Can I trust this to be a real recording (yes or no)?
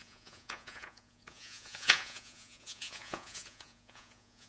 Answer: no